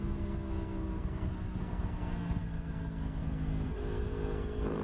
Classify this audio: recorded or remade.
remade